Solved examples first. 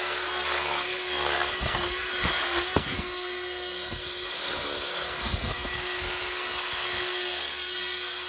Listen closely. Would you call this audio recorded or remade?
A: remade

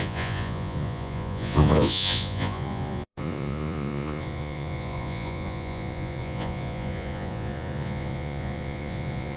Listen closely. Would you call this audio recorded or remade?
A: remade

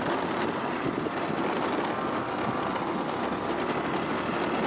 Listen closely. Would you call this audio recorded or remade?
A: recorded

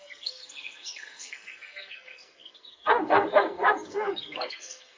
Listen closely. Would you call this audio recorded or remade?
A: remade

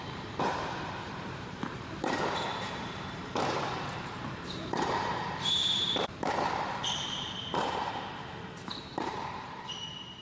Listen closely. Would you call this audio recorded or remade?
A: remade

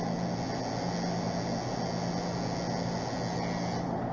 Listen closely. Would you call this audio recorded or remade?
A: recorded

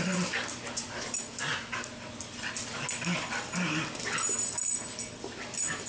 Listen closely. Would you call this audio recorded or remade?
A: recorded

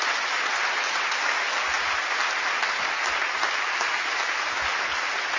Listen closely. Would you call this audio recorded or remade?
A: recorded